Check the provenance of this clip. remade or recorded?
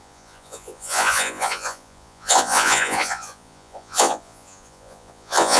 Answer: remade